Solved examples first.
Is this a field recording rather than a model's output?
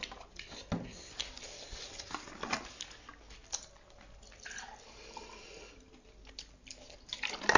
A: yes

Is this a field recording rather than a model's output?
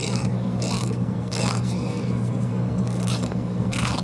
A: no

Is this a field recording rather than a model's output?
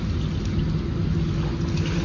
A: yes